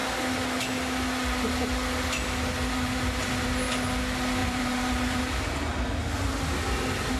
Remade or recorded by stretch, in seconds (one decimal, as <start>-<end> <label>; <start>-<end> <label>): 0.0-4.4 recorded; 4.4-5.2 remade; 5.2-7.2 recorded